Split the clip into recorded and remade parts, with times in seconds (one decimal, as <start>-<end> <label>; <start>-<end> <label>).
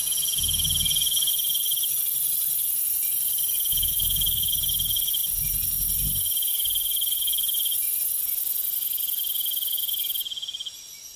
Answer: 0.0-3.7 recorded; 3.7-4.5 remade; 4.5-11.2 recorded